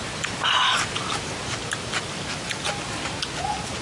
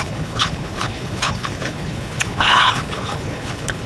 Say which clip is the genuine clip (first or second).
first